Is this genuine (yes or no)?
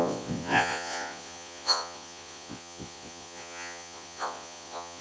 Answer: no